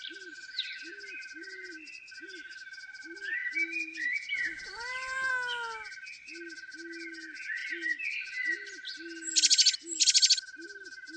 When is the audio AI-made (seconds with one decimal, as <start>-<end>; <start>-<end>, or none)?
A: 3.4-5.3

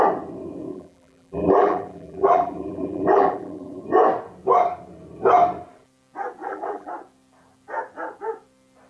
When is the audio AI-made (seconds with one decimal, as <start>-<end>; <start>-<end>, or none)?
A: 0.7-3.8; 6.4-6.9

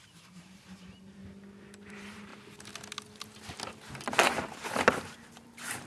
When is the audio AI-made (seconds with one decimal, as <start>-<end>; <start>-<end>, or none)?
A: 0.0-1.2; 1.9-2.3; 5.0-5.9

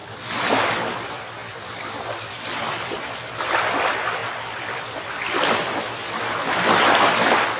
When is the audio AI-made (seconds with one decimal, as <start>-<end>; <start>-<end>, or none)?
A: 0.0-0.5; 1.4-3.2; 4.2-5.9

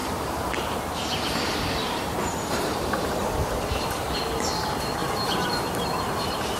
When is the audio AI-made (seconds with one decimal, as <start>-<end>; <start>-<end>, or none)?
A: 0.0-0.8; 1.8-3.1; 5.0-6.6

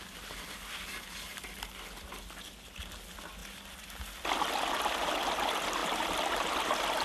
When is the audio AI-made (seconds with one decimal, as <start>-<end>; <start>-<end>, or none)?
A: 1.3-2.8; 3.4-5.1; 5.8-6.6

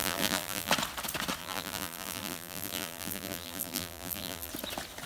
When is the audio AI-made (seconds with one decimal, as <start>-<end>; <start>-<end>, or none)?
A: 0.0-0.7; 1.4-4.5

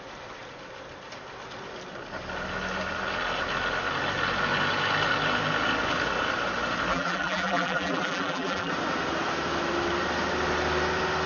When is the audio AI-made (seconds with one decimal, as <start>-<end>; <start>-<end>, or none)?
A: 6.9-8.7